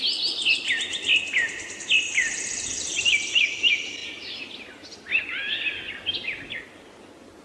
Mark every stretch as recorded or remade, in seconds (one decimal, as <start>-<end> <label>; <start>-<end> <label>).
0.0-2.2 recorded; 2.2-3.0 remade; 3.0-7.4 recorded